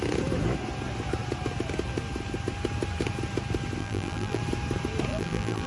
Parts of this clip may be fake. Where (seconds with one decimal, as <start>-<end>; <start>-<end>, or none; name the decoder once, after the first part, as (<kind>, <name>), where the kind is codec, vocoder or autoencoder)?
3.8-4.4 (vocoder, BigVGAN v2); 5.1-5.7